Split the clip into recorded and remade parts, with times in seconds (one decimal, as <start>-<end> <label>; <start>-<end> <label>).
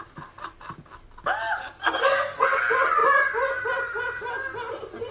0.0-1.8 recorded; 1.8-2.6 remade; 2.6-5.1 recorded